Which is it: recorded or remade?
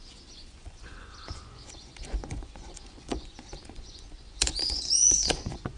remade